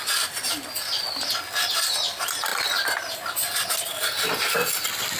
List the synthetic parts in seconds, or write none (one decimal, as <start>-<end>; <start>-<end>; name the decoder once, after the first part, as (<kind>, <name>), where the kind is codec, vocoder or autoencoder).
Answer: none